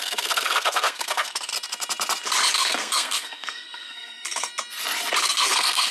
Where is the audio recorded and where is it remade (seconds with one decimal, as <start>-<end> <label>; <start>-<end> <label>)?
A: 0.0-1.5 remade; 1.5-2.5 recorded; 2.5-4.5 remade; 4.5-5.2 recorded; 5.2-5.9 remade